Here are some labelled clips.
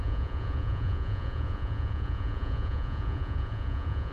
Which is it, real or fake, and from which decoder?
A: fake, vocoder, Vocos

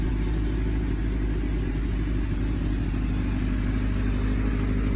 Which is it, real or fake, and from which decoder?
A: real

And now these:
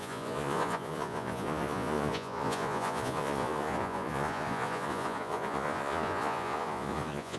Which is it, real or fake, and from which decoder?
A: fake, vocoder, Vocos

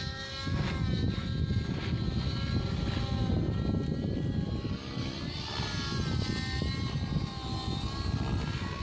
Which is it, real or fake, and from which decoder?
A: real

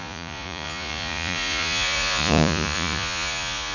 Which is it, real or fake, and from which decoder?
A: fake, vocoder, Vocos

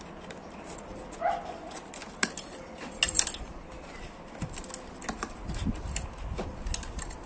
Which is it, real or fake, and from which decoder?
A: real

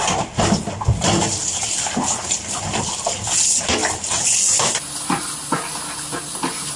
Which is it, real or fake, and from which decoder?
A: real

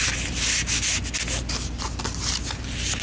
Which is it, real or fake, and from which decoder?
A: real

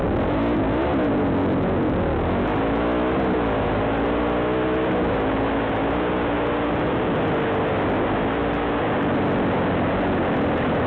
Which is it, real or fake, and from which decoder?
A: real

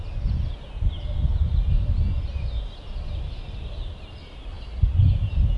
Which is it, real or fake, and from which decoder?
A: real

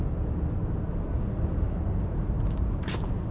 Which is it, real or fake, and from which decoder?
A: real